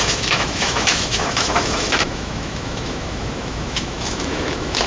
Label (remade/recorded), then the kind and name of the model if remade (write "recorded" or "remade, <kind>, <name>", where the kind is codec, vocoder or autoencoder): remade, autoencoder, DAC-VAE